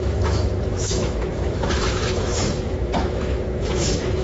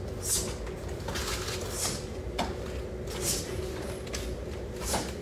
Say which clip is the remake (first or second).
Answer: first